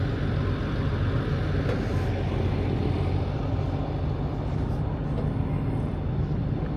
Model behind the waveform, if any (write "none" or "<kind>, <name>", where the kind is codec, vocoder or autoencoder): none